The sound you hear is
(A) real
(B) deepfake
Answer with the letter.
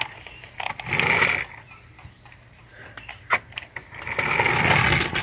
A